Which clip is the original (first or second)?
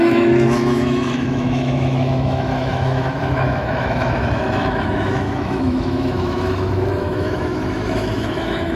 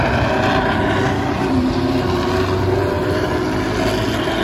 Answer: second